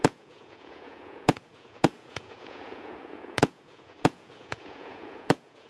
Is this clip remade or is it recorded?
remade